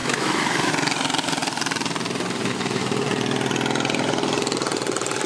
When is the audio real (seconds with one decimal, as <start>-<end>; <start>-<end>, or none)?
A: 0.7-5.3